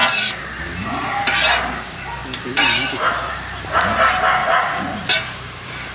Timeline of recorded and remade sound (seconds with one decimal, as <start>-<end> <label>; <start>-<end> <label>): 0.0-4.4 recorded; 4.4-5.0 remade; 5.0-5.9 recorded